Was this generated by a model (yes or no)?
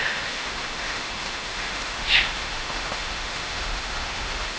yes